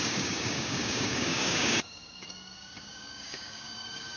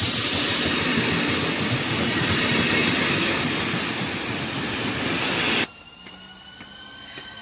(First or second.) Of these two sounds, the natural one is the second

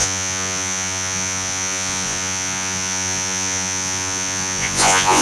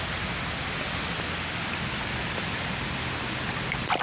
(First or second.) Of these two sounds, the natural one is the second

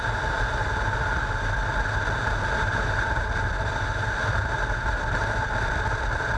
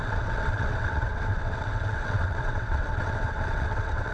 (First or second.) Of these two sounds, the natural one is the first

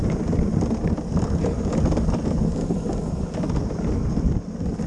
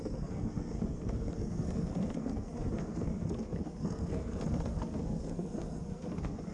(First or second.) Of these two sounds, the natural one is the first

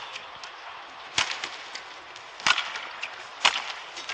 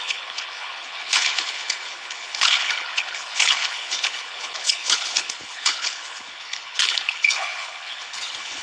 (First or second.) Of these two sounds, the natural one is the first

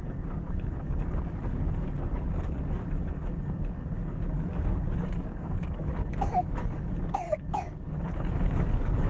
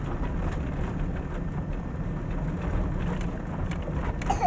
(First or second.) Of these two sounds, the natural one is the second